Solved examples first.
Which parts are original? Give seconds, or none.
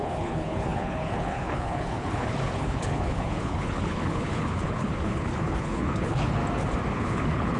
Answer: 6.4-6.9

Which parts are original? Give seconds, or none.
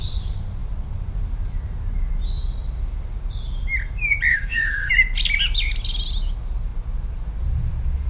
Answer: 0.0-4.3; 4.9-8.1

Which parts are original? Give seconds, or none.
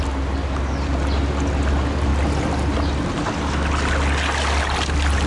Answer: 0.0-5.3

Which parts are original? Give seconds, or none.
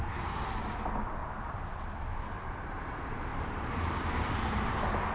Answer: 0.0-1.2; 2.2-3.3; 4.6-5.1